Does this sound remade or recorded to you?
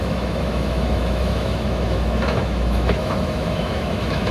remade